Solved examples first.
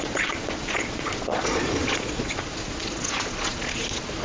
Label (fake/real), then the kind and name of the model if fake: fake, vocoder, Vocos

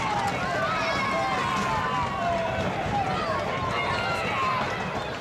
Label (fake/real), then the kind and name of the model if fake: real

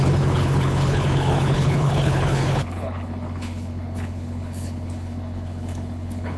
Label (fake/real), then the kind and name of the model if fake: fake, codec, HILCodec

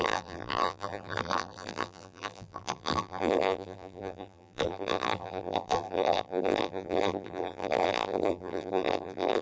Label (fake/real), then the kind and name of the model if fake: fake, vocoder, BigVGAN v2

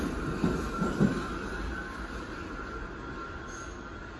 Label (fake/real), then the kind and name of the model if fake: real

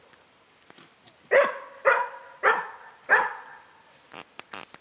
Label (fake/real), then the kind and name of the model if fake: fake, vocoder, BigVGAN v2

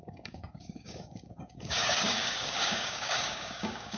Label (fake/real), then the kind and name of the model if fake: fake, codec, DAC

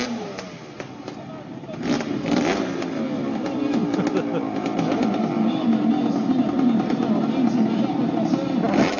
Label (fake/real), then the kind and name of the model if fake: real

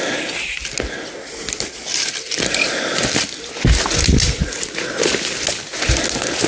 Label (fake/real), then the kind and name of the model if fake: real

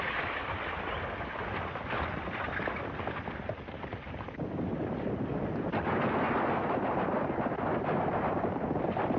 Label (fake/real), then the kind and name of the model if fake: real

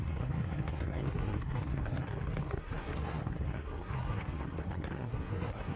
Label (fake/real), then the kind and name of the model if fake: fake, codec, SNAC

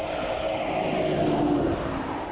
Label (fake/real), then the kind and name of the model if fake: real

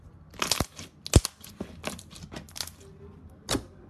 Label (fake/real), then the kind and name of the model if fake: real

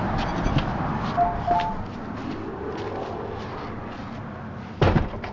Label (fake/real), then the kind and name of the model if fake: real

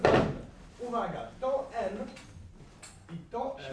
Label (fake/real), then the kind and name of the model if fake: real